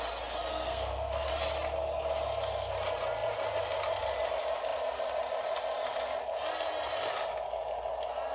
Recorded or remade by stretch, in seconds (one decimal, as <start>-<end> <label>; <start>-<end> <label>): 0.0-0.5 recorded; 0.5-1.3 remade; 1.3-8.3 recorded